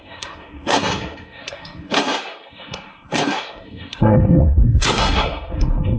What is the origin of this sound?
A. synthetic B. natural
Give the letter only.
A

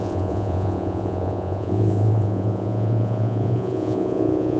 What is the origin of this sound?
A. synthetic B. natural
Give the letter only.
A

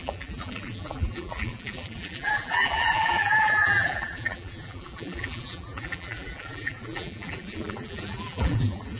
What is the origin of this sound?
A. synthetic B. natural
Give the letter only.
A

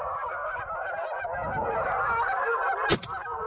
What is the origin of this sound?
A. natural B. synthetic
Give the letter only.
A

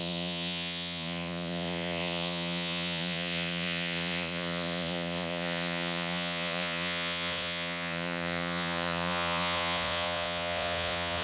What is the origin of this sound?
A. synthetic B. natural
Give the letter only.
A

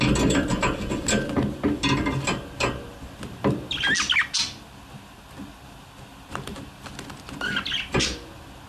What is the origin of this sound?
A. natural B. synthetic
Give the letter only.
A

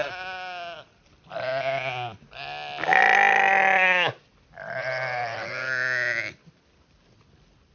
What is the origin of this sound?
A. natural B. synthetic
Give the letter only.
A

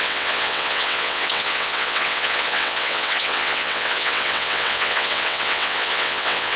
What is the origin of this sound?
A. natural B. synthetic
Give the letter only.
B